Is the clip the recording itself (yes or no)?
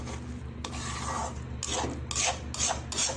yes